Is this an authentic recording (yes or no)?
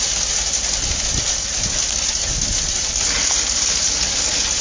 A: yes